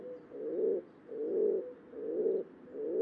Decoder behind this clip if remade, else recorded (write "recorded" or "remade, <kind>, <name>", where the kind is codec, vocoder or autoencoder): recorded